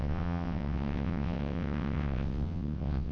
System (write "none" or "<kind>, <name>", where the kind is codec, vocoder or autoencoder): vocoder, WaveNeXt